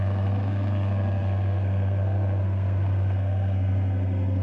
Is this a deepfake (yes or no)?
yes